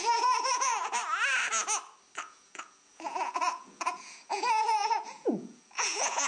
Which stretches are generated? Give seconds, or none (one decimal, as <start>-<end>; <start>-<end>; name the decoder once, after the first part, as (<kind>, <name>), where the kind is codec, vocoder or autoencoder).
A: 0.0-1.0 (vocoder, Vocos); 2.2-6.3